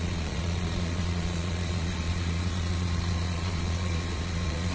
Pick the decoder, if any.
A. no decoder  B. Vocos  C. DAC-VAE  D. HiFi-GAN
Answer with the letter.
B